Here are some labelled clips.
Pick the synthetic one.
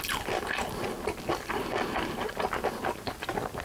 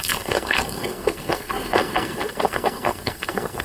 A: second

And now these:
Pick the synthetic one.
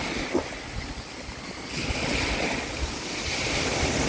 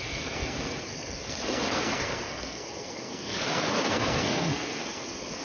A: second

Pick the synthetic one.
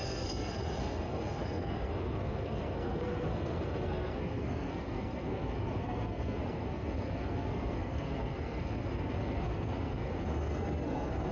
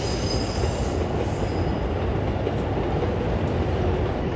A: first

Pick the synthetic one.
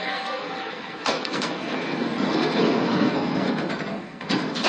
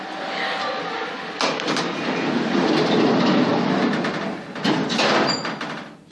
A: first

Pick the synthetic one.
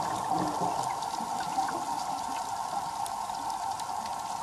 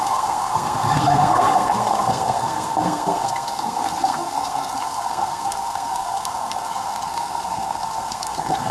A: second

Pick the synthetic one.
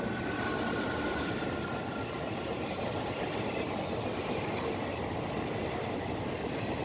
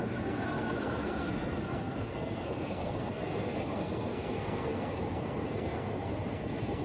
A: second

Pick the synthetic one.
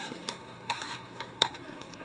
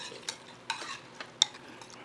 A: first